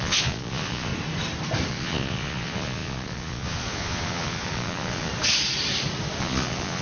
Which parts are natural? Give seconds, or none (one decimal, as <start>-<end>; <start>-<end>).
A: 0.9-1.7; 5.1-6.2

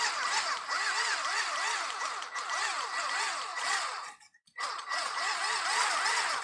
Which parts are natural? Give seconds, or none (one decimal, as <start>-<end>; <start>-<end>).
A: 0.0-3.5; 5.4-6.4

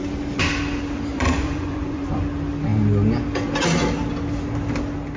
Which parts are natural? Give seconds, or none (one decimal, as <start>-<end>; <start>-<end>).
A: 0.0-1.1; 2.2-5.2